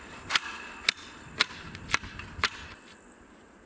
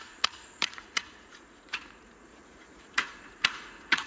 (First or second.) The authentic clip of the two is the first